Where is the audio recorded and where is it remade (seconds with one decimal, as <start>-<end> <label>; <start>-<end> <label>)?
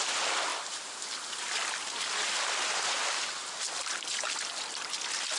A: 0.0-5.4 recorded